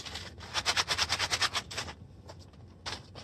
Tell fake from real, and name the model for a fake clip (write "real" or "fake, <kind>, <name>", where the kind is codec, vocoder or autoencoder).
real